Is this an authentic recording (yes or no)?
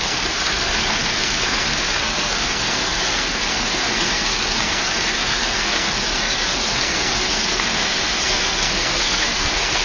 no